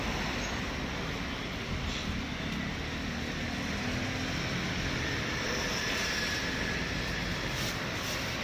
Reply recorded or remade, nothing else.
recorded